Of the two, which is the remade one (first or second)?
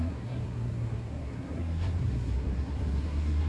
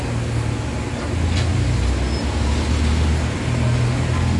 first